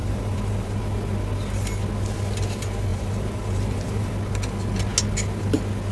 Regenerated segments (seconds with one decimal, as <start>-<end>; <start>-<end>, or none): 0.0-0.8; 2.9-4.1